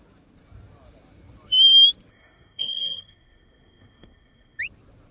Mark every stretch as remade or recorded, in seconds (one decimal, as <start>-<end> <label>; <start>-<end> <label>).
0.0-2.1 recorded; 2.1-4.6 remade; 4.6-5.1 recorded